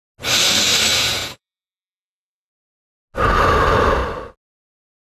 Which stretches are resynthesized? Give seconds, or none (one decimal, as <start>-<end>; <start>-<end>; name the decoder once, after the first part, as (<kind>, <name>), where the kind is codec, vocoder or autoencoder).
0.9-2.5 (vocoder, Vocos)